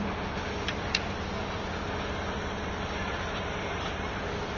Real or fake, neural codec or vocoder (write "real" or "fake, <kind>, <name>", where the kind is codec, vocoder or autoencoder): real